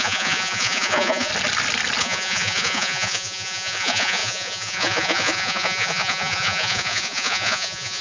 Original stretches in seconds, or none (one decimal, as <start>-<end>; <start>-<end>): 1.3-2.0